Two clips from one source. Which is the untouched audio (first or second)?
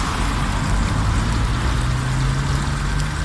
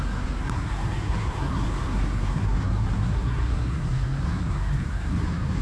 first